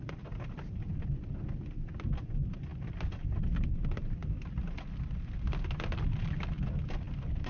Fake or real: real